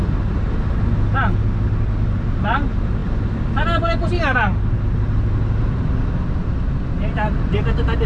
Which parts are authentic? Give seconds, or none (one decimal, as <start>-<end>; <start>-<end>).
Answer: 0.0-8.1